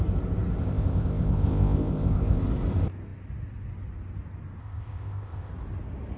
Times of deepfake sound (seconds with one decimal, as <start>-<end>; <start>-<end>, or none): 0.6-2.4; 4.6-5.5